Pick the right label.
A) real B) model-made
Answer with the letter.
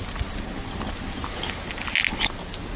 A